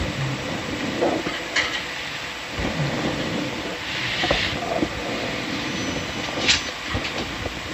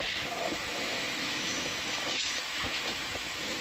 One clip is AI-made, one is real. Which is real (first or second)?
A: first